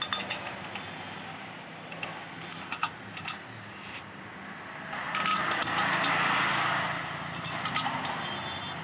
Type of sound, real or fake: real